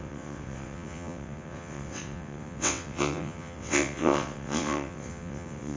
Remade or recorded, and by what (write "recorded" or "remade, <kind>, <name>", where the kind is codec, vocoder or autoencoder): remade, vocoder, WaveNeXt